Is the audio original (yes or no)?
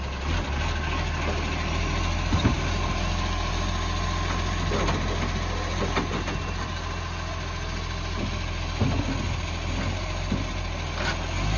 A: yes